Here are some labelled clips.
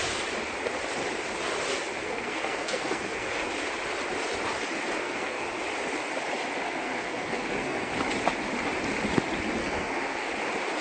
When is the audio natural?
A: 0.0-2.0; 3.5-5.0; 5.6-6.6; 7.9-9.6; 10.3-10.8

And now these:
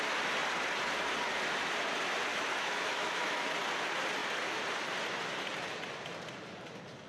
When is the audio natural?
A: 0.0-2.3; 3.5-7.1

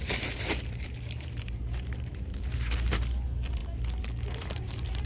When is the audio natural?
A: 3.6-4.3